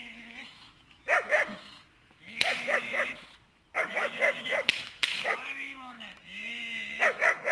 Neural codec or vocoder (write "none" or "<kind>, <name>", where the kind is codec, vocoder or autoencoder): autoencoder, DAC-VAE